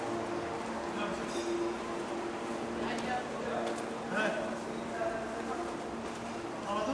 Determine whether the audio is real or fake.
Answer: real